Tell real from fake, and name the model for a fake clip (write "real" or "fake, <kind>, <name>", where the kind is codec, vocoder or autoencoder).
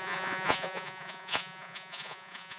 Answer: fake, vocoder, Vocos